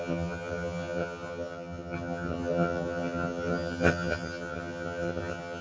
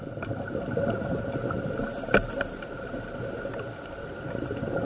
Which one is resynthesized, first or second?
first